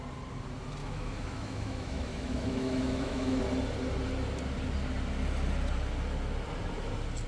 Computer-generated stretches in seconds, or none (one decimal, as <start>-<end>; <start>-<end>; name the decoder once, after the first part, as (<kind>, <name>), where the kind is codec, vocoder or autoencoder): 0.8-3.4 (autoencoder, DAC-VAE)

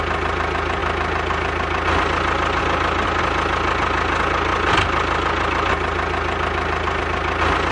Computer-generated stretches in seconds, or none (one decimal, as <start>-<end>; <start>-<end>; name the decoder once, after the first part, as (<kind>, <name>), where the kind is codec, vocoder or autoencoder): none

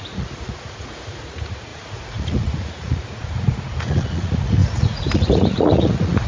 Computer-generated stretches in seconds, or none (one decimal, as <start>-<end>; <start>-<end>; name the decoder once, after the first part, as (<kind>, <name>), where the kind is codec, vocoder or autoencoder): 0.0-6.3 (vocoder, Vocos)

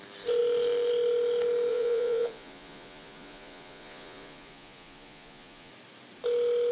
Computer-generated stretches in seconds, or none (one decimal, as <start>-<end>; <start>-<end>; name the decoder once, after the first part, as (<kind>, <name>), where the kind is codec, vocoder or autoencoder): 1.7-5.7 (vocoder, Vocos)

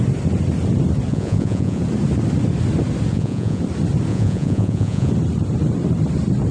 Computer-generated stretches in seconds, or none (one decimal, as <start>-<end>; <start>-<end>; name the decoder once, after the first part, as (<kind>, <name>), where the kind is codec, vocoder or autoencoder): 1.1-1.8 (vocoder, Vocos); 3.1-3.6; 4.1-5.1

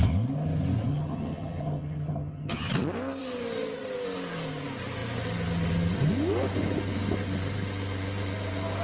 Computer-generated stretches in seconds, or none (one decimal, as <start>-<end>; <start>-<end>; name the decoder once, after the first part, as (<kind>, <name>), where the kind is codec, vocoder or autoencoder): 0.9-2.7 (vocoder, HiFi-GAN)

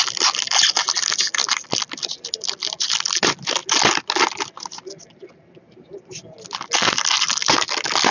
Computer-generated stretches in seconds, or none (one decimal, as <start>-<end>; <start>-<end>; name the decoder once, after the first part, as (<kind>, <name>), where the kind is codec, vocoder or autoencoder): none